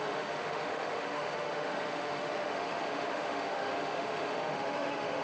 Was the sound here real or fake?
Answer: fake